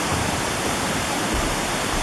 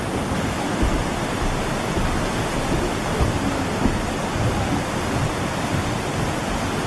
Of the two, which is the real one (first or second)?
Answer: second